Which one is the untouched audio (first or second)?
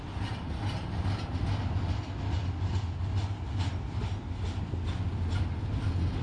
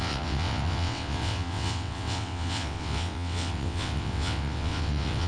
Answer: first